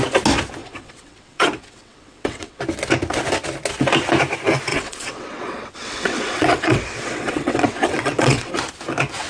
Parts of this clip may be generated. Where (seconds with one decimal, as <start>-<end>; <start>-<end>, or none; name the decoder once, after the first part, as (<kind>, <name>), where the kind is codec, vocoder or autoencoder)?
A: 0.6-2.6 (vocoder, WaveNeXt); 4.7-8.5